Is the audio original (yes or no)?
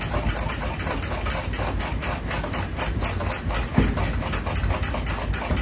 yes